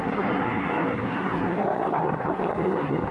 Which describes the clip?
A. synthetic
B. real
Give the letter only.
A